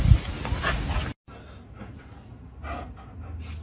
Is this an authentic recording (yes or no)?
yes